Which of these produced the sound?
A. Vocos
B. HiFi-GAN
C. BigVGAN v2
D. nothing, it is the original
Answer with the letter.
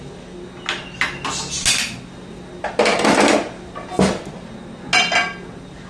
D